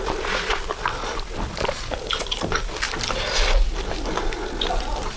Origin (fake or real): real